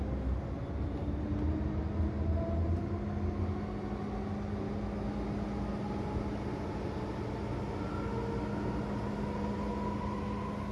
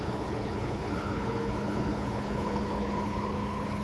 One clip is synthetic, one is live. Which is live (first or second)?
first